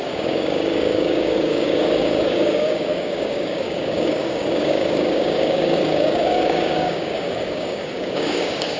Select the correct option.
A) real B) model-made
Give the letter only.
B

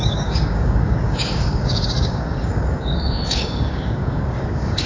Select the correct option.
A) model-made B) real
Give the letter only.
A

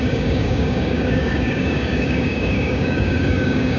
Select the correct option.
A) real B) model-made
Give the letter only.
B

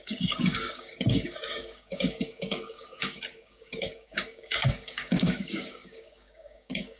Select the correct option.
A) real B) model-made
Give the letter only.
B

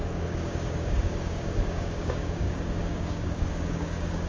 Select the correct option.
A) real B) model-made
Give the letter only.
B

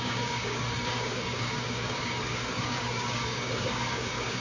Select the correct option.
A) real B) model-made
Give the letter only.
B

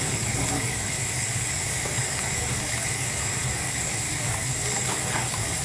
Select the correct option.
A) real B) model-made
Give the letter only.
B